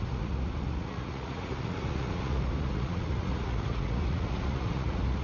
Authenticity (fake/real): fake